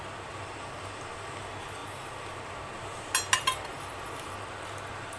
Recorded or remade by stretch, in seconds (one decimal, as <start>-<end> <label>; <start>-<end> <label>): 0.0-5.2 recorded